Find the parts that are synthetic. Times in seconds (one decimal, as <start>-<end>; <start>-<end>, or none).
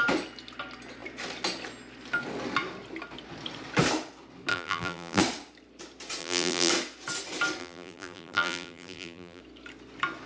4.5-5.2; 6.2-6.7; 7.6-9.4